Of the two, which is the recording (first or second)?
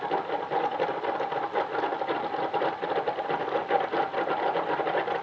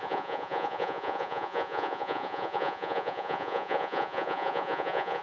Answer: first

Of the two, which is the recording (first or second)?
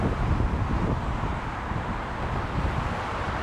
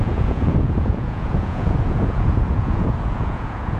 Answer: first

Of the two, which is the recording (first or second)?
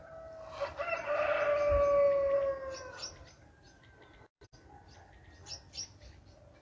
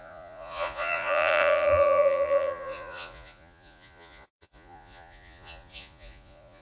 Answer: first